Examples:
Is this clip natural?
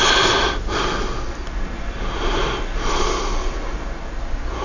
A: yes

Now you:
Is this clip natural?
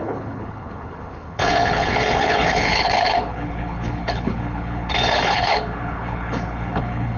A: no